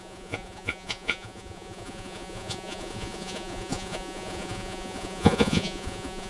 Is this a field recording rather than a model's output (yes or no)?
no